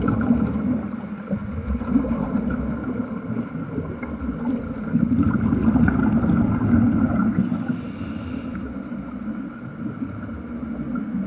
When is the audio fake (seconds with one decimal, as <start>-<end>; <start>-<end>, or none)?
none